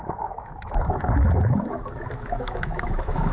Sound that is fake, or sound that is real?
fake